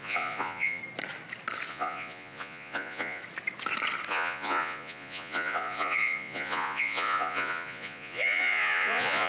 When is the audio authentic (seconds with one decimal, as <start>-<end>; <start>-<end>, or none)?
0.8-1.7; 3.2-4.1